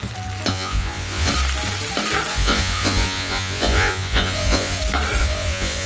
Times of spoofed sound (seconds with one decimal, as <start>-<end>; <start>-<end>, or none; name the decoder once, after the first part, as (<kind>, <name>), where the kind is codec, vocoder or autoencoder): 0.5-1.3 (vocoder, Vocos); 2.3-4.8; 5.2-5.9